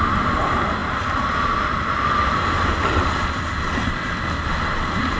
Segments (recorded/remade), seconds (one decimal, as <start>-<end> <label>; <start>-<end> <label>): 0.0-5.2 recorded